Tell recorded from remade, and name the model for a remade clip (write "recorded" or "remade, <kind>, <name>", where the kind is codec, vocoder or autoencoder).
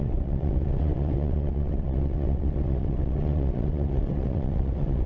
remade, vocoder, WaveNeXt